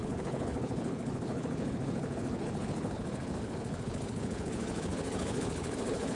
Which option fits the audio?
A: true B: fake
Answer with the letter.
B